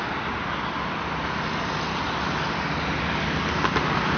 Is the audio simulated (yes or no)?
no